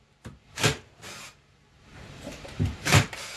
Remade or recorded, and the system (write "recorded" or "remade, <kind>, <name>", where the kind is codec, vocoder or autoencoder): remade, vocoder, BigVGAN v2